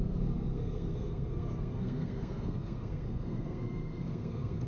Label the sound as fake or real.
fake